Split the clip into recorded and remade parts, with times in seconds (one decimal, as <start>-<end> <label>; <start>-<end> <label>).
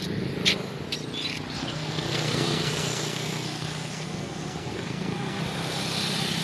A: 0.0-1.6 recorded; 1.6-5.4 remade; 5.4-6.4 recorded